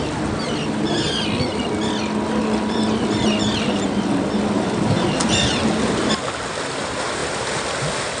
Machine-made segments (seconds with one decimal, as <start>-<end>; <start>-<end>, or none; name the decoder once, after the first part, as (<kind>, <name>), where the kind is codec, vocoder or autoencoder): none